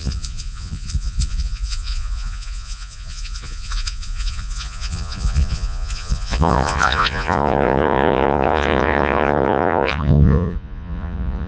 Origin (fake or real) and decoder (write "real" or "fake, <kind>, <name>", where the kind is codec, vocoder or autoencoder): fake, vocoder, Vocos